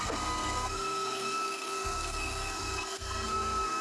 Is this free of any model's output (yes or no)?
no